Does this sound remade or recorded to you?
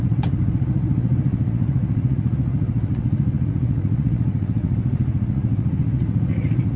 remade